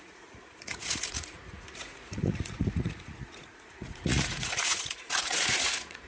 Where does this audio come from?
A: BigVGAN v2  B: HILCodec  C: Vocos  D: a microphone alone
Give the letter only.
C